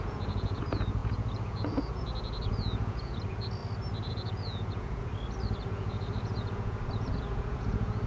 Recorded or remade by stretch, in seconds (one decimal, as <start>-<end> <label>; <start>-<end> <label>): 0.0-3.6 remade; 3.6-4.1 recorded; 4.1-5.1 remade; 5.1-5.6 recorded; 5.6-8.1 remade